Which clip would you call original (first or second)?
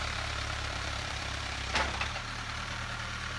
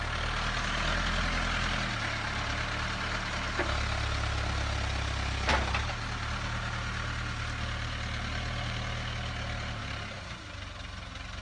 second